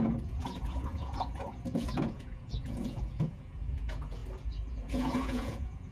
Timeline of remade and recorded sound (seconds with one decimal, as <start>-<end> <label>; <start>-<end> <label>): 0.0-4.2 remade; 4.2-4.7 recorded; 4.7-5.9 remade